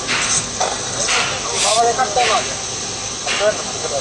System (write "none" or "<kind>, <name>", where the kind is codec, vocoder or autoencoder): none